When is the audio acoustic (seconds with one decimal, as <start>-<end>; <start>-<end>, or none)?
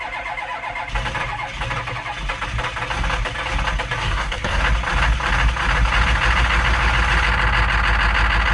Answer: 0.0-4.0; 4.6-8.5